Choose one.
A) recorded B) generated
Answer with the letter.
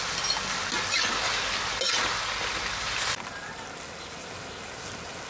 A